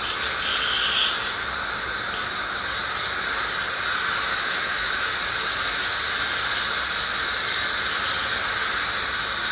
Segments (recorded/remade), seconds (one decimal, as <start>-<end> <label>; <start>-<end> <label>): 0.0-4.3 recorded; 4.3-5.1 remade; 5.1-9.5 recorded